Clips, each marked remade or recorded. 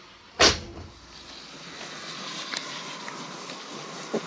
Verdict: recorded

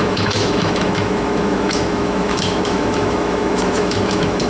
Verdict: remade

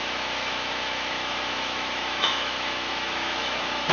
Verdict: remade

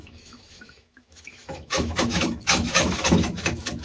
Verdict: remade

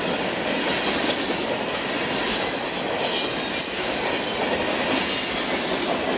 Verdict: recorded